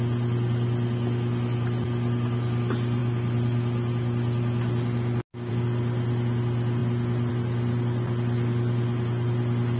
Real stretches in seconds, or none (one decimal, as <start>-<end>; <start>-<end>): 0.0-9.8